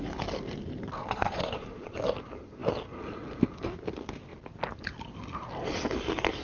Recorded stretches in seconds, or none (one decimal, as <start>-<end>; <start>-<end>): 0.0-1.0; 2.0-6.4